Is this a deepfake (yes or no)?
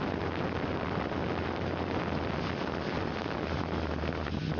no